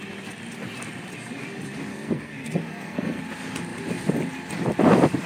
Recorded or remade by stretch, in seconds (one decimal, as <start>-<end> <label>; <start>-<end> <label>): 0.0-1.9 recorded; 1.9-3.2 remade; 3.2-5.3 recorded